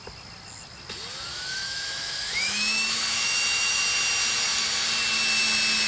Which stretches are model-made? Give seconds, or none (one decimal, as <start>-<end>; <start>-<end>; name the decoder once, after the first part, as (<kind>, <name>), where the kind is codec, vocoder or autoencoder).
1.3-3.8 (autoencoder, DAC-VAE)